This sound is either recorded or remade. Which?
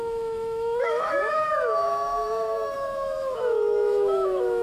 remade